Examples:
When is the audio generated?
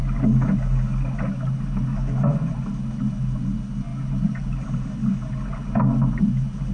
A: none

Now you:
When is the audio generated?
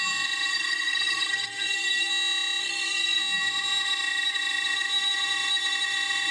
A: 0.5-2.1 (codec, SNAC); 2.6-3.2